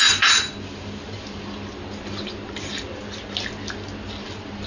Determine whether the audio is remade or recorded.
recorded